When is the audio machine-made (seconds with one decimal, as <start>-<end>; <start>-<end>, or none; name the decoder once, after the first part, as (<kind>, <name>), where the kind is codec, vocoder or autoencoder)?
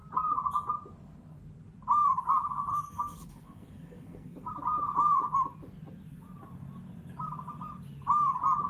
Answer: 2.7-4.5 (codec, SNAC)